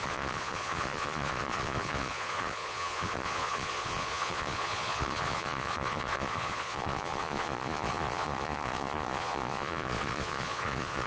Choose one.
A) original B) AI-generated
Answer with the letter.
B